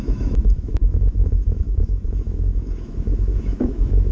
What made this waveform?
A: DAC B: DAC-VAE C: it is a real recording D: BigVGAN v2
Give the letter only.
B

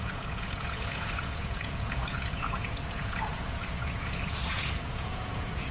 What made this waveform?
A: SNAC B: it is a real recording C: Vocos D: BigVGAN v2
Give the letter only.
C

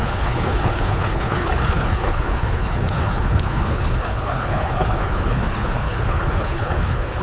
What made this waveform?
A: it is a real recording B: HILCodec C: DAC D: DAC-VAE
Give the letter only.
B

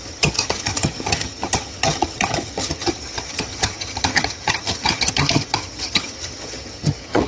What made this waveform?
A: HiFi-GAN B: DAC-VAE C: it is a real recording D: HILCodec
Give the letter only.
A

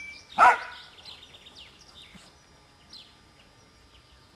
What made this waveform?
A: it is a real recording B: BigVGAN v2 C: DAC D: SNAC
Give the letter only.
A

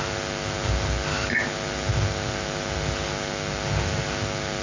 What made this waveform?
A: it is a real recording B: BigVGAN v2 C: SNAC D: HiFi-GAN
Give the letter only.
A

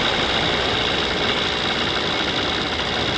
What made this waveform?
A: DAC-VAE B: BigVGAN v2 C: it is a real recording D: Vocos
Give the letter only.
C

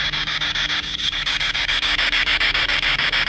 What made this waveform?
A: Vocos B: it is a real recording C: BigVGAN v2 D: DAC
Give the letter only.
D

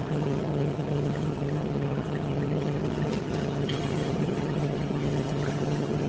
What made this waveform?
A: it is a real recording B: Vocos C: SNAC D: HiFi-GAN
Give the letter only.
D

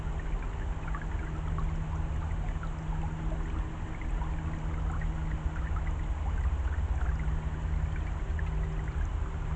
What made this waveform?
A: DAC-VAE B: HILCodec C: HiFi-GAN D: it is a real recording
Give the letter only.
D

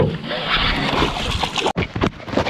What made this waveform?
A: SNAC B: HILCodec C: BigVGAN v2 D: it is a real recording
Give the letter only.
D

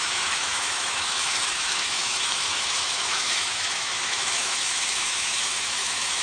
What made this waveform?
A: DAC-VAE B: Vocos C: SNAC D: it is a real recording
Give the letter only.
A